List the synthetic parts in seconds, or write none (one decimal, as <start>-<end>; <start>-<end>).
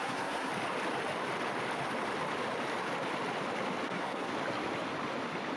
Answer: 0.0-0.5; 3.9-4.3